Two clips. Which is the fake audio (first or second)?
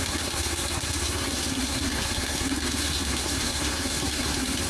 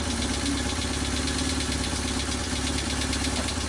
first